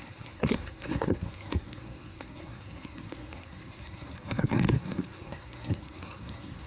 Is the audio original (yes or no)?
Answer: no